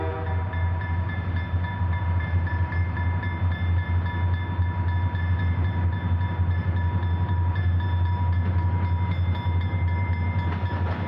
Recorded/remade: recorded